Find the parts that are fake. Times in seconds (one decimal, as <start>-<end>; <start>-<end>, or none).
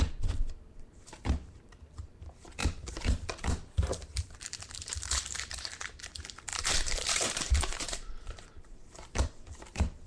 0.0-10.1